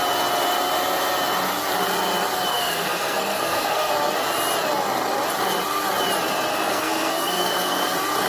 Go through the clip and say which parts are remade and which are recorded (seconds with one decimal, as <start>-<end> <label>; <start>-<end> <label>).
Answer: 0.0-2.5 recorded; 2.5-3.9 remade; 3.9-6.5 recorded; 6.5-7.8 remade; 7.8-8.3 recorded